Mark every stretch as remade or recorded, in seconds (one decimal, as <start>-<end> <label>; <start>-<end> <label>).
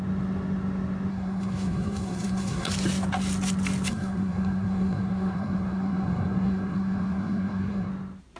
0.0-1.1 recorded; 1.1-2.7 remade; 2.7-3.9 recorded; 3.9-7.9 remade; 7.9-8.4 recorded